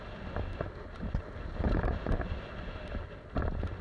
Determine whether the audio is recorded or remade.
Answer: recorded